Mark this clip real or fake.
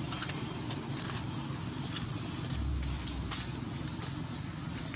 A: real